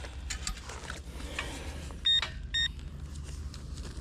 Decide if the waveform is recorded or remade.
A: recorded